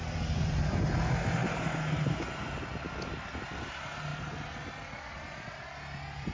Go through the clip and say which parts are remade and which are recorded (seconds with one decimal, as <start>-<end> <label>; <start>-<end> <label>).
0.0-6.3 recorded